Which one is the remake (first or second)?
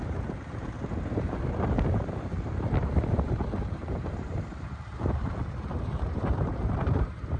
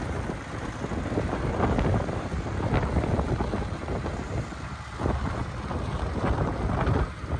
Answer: first